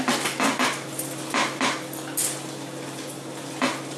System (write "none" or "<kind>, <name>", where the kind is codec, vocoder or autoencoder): none